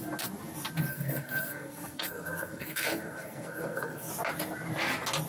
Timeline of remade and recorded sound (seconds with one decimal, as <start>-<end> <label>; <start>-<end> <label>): 0.0-0.9 recorded; 0.9-4.1 remade; 4.1-5.3 recorded

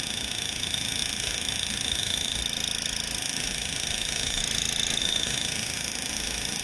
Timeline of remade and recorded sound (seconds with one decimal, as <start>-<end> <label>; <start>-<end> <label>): 0.0-2.4 remade; 2.4-3.2 recorded; 3.2-4.4 remade; 4.4-5.0 recorded; 5.0-6.6 remade